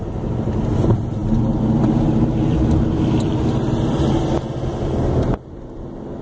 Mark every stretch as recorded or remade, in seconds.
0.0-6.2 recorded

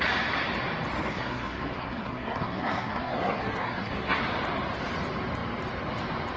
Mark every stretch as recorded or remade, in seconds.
0.0-1.1 recorded; 1.1-4.2 remade; 4.2-6.4 recorded

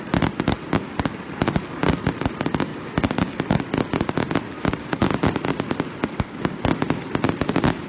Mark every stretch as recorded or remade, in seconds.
0.0-6.1 recorded; 6.1-6.6 remade; 6.6-7.9 recorded

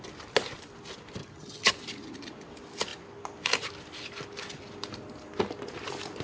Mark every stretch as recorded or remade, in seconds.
0.0-1.2 recorded; 1.2-1.7 remade; 1.7-6.2 recorded

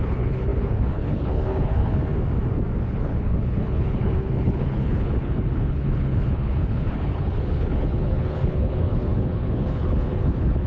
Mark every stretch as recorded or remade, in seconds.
0.0-2.0 remade; 2.0-2.8 recorded; 2.8-10.7 remade

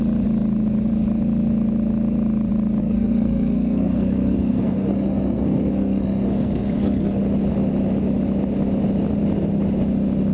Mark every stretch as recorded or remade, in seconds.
0.0-2.8 recorded; 2.8-7.2 remade; 7.2-10.3 recorded